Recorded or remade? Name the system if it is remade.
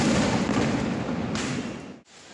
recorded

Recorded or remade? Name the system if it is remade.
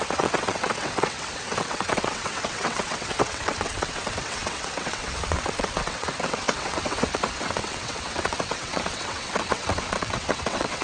remade, vocoder, WaveNeXt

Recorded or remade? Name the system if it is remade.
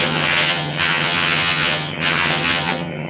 remade, vocoder, HiFi-GAN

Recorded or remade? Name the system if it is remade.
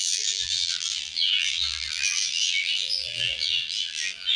remade, vocoder, BigVGAN v2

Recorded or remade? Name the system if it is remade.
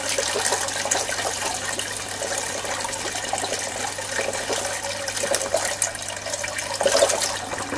recorded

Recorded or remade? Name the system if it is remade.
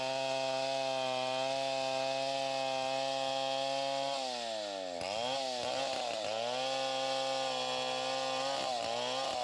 recorded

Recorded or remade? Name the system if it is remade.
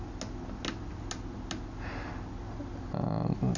recorded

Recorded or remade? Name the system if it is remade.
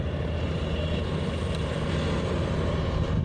recorded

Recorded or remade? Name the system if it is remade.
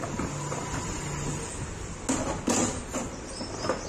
recorded